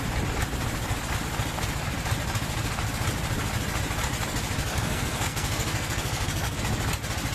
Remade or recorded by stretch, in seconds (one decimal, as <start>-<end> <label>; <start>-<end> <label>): 0.0-4.7 recorded; 4.7-6.6 remade; 6.6-7.3 recorded